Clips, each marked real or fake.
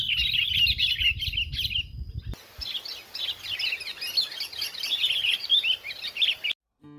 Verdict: real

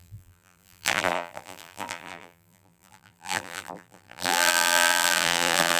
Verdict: fake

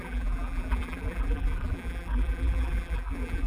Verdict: fake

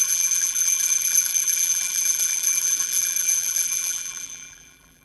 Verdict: fake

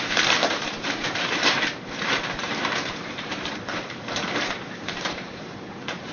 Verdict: fake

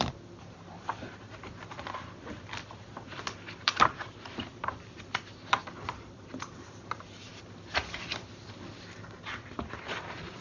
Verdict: fake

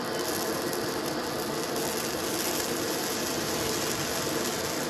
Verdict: real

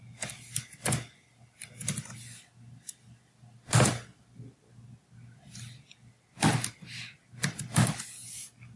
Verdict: real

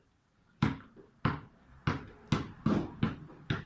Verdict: real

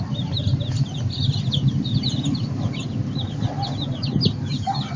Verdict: real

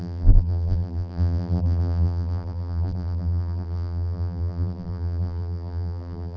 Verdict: fake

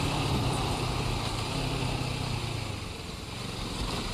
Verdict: real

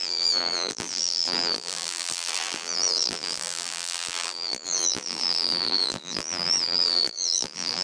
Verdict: fake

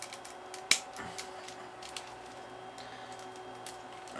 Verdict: real